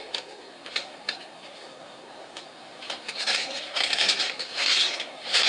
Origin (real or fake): fake